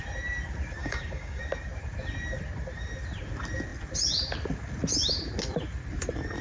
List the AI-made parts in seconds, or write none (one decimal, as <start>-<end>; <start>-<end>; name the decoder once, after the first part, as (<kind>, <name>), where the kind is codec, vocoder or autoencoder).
0.8-1.4 (codec, DAC)